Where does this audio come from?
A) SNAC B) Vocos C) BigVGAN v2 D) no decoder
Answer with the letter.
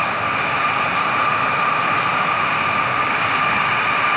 D